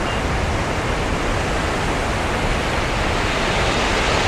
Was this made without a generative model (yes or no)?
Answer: yes